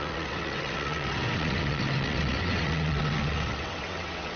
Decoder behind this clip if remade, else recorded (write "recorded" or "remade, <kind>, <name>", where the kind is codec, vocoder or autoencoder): remade, vocoder, WaveNeXt